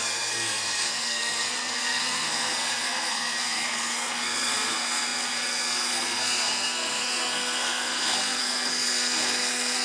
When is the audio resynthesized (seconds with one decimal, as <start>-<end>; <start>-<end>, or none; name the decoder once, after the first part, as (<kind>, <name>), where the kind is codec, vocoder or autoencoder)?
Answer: 0.0-9.8 (codec, SNAC)